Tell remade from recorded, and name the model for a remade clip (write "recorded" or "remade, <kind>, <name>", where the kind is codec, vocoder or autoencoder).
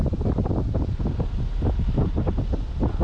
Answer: recorded